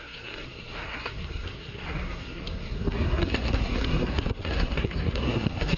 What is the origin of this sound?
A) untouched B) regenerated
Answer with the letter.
B